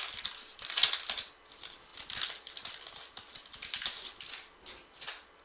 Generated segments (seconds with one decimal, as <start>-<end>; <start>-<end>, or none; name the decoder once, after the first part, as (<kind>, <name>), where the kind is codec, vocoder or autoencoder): none